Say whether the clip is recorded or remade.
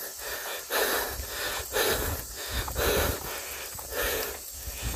recorded